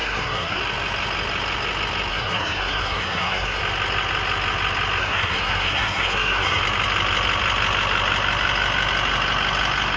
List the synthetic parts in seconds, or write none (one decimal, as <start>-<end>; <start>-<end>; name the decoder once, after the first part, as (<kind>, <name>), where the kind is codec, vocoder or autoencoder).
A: 0.0-0.6 (codec, SNAC); 2.1-3.6; 5.0-6.6